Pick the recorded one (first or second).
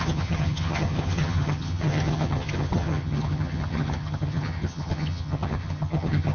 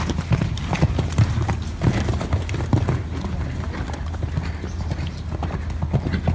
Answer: second